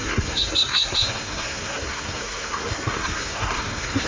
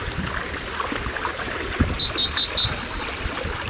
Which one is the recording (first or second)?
second